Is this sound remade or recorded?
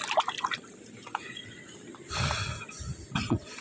recorded